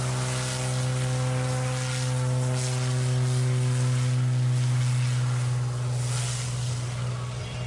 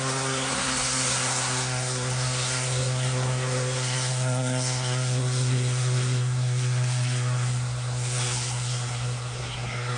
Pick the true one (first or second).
first